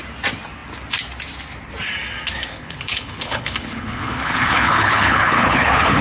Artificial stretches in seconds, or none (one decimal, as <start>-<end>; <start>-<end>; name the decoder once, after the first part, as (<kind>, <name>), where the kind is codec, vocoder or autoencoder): 2.4-6.0 (codec, HILCodec)